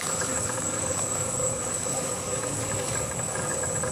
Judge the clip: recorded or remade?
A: remade